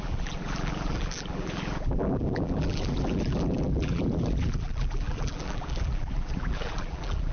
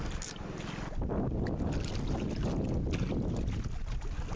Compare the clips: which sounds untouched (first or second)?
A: second